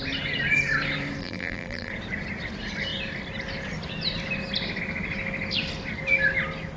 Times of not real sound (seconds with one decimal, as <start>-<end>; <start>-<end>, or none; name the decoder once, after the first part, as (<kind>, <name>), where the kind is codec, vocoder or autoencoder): 1.2-1.9 (vocoder, BigVGAN v2)